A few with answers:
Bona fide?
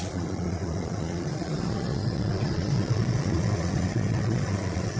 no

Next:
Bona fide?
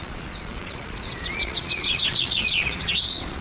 no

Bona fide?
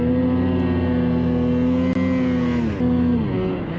yes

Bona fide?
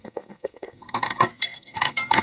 no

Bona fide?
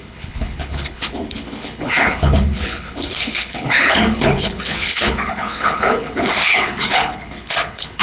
no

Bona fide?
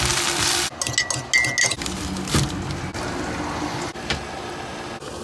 yes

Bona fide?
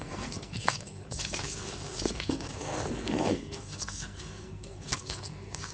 no